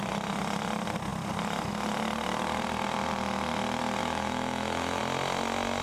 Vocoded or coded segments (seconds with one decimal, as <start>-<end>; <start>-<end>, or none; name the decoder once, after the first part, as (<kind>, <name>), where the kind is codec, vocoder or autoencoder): 4.0-5.0 (autoencoder, DAC-VAE)

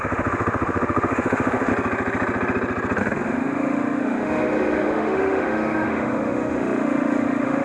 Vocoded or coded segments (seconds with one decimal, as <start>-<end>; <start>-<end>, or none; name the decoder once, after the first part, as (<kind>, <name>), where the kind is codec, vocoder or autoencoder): 0.0-1.7 (autoencoder, DAC-VAE); 3.0-7.6

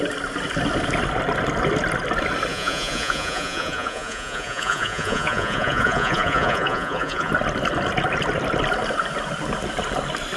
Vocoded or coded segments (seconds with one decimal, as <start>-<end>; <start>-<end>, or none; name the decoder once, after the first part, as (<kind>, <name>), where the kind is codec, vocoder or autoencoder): 2.5-7.3 (vocoder, Vocos)

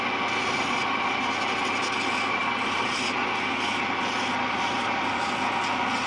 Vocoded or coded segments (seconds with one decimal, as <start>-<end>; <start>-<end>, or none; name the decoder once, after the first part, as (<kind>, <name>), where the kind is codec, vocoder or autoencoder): none

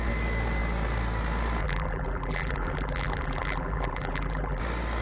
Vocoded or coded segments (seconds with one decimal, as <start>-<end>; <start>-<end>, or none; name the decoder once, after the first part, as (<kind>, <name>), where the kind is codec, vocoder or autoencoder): 1.6-4.6 (vocoder, BigVGAN v2)

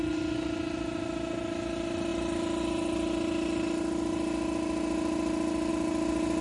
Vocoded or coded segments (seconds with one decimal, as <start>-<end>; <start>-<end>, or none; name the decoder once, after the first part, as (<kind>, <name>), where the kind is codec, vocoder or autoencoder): none

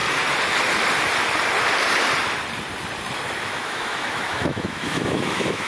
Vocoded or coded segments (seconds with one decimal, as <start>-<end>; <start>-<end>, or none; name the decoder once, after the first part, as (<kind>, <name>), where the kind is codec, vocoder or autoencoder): 3.4-5.7 (autoencoder, DAC-VAE)

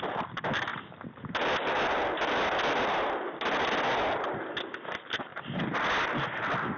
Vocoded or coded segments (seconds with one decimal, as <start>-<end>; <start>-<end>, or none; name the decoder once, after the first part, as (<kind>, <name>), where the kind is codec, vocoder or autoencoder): none